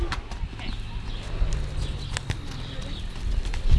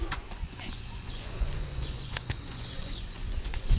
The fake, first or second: second